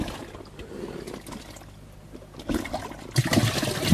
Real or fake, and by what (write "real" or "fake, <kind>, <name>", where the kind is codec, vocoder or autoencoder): real